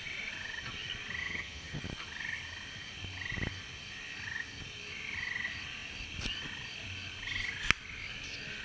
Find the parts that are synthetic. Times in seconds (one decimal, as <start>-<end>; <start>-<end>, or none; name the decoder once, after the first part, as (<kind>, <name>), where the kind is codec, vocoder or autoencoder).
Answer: 1.2-1.8 (vocoder, HiFi-GAN)